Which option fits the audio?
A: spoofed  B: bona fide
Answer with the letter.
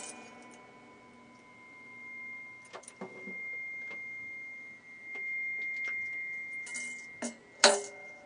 B